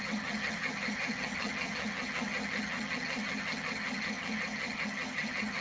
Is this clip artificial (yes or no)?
yes